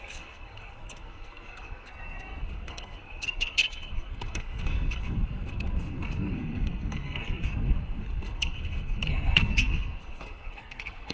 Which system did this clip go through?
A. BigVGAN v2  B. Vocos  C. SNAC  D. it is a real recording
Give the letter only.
C